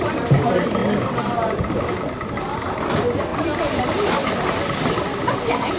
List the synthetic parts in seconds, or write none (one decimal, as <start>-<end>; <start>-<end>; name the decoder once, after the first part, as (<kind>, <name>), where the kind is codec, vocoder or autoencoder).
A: none